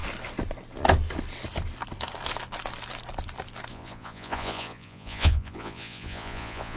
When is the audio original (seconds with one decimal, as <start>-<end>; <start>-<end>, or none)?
0.0-3.7